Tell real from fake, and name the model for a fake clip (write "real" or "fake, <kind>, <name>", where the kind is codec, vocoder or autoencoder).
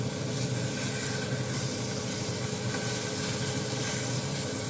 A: real